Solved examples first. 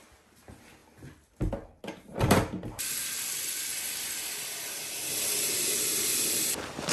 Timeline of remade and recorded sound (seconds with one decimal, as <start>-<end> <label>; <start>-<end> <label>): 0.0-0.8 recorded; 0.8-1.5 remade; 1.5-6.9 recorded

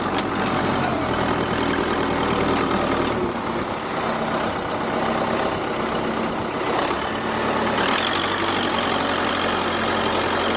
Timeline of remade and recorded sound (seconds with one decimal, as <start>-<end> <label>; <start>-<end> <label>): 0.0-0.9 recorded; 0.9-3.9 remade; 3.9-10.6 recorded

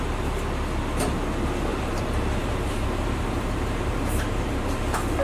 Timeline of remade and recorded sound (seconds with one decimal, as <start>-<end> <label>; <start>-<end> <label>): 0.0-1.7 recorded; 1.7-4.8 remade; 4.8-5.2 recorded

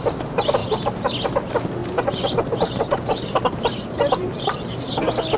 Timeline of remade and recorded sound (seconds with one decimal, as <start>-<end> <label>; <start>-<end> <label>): 0.0-0.6 recorded; 0.6-1.1 remade; 1.1-1.8 recorded; 1.8-5.0 remade; 5.0-5.4 recorded

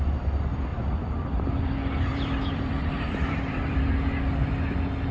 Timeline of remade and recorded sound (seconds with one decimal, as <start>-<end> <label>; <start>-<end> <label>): 0.0-0.7 recorded; 0.7-3.8 remade; 3.8-5.1 recorded

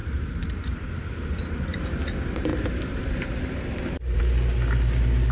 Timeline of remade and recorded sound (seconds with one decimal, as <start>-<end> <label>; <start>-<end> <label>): 0.0-0.9 remade; 0.9-2.5 recorded; 2.5-4.2 remade; 4.2-5.3 recorded

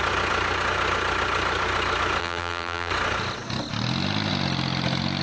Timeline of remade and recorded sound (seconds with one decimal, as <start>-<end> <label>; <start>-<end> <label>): 0.0-2.2 recorded; 2.2-2.9 remade; 2.9-5.2 recorded